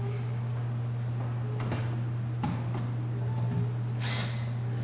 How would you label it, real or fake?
real